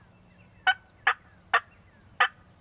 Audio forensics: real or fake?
real